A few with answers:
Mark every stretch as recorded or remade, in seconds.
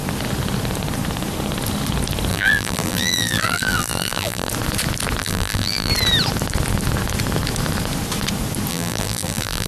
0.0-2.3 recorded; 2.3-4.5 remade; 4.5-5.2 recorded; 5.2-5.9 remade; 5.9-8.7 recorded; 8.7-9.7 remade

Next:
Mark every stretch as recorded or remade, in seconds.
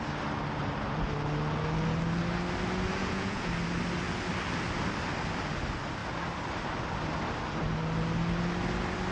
0.0-3.0 recorded; 3.0-3.5 remade; 3.5-9.1 recorded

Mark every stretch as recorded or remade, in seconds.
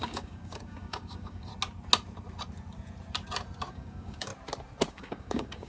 0.0-1.5 remade; 1.5-3.7 recorded; 3.7-4.3 remade; 4.3-4.9 recorded; 4.9-5.7 remade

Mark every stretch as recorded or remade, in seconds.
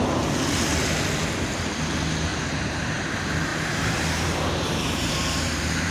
0.0-2.3 recorded; 2.3-2.9 remade; 2.9-3.5 recorded; 3.5-5.9 remade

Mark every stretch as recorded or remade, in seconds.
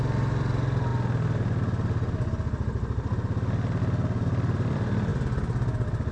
0.0-0.9 remade; 0.9-3.8 recorded; 3.8-5.1 remade; 5.1-6.1 recorded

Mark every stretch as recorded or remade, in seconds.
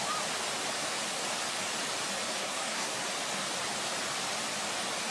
0.0-2.4 recorded; 2.4-3.0 remade; 3.0-5.1 recorded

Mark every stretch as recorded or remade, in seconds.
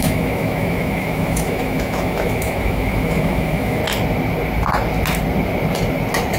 0.0-3.8 remade; 3.8-6.4 recorded